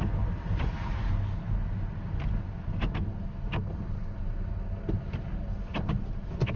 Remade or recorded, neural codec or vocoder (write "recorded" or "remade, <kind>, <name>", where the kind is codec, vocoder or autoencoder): recorded